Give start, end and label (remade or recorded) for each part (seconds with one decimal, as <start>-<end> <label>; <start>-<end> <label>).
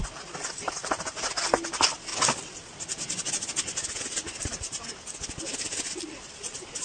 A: 0.0-6.8 recorded